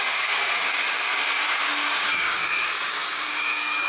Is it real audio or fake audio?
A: fake